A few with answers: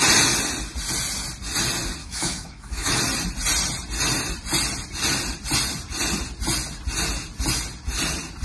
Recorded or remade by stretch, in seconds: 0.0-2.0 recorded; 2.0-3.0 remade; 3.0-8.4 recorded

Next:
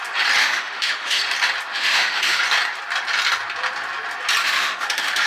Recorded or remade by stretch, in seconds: 0.0-0.4 recorded; 0.4-1.2 remade; 1.2-1.7 recorded; 1.7-2.4 remade; 2.4-4.4 recorded; 4.4-5.3 remade

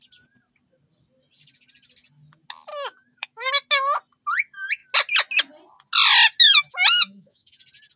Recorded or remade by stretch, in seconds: 0.0-2.7 recorded; 2.7-3.5 remade; 3.5-6.5 recorded; 6.5-7.6 remade; 7.6-8.0 recorded